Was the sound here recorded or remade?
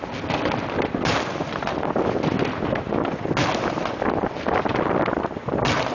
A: recorded